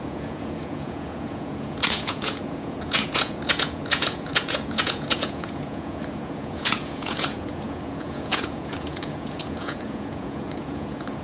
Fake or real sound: fake